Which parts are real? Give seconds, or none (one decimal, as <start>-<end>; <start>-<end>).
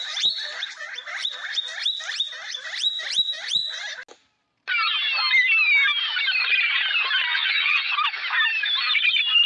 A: 0.0-7.3; 7.9-9.5